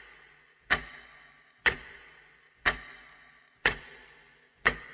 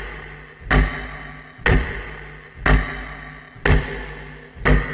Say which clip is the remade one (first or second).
first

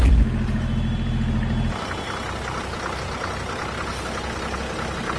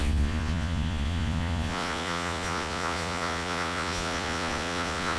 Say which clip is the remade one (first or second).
second